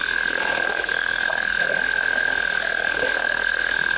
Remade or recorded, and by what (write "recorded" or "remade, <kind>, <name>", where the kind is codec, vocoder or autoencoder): remade, codec, SNAC